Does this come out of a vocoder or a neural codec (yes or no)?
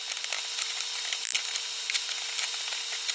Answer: no